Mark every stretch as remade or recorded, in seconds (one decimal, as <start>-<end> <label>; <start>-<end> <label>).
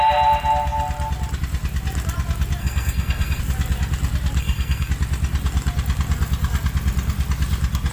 0.0-2.6 recorded; 2.6-3.4 remade; 3.4-4.4 recorded; 4.4-4.9 remade; 4.9-7.9 recorded